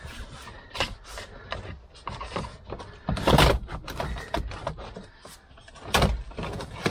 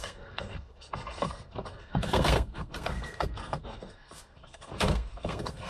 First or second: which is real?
first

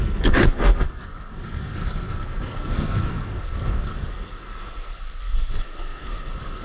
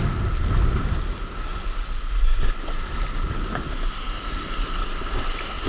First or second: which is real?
second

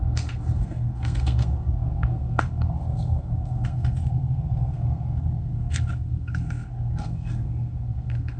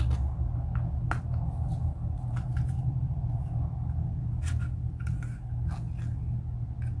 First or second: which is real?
second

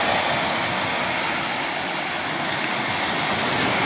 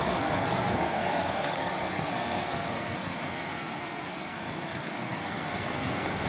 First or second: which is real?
first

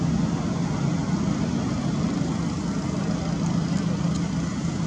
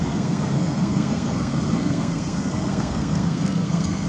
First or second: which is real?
first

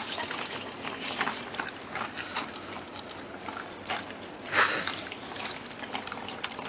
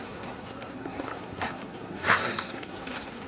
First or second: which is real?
first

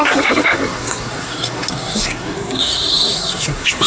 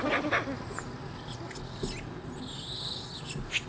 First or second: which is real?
second